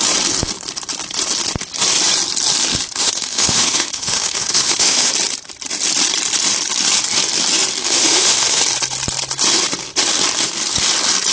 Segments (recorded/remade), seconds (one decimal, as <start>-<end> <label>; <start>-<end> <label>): 0.0-3.0 recorded; 3.0-5.1 remade; 5.1-7.8 recorded; 7.8-8.6 remade; 8.6-11.3 recorded